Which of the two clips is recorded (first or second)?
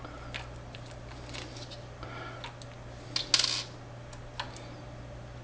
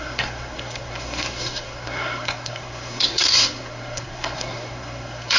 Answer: first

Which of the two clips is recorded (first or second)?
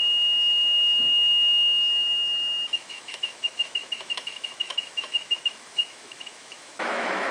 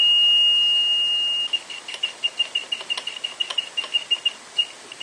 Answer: second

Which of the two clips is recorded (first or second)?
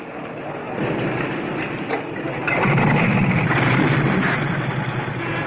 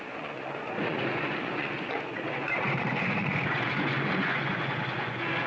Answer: first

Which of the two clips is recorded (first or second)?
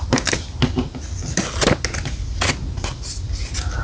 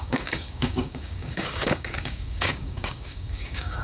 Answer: first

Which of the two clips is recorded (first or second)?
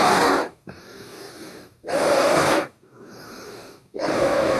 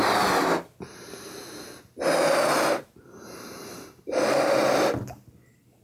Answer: second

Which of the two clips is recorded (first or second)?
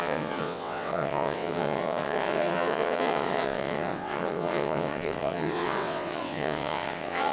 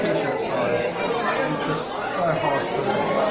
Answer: second